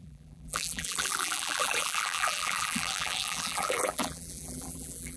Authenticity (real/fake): fake